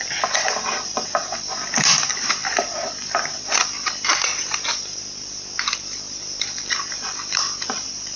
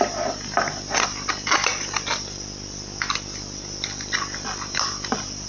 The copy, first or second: first